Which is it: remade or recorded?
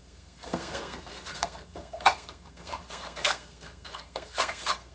remade